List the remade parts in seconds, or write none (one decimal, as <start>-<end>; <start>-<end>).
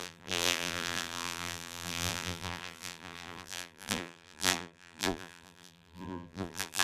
0.0-6.8